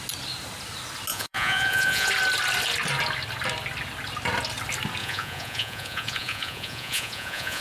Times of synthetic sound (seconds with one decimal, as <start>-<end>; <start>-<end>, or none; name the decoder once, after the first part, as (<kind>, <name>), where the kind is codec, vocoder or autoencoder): 1.1-2.1 (vocoder, Vocos); 5.0-7.6

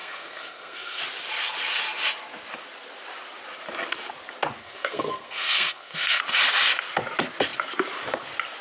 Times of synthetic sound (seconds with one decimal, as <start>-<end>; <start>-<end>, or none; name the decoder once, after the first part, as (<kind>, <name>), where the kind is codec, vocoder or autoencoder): 0.0-1.0 (codec, SNAC); 4.6-6.2